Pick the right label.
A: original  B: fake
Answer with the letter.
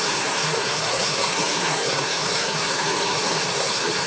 B